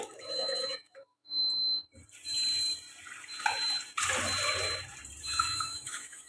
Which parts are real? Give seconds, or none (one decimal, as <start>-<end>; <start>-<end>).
1.4-5.2